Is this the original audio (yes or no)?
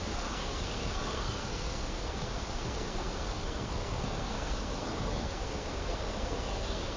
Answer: no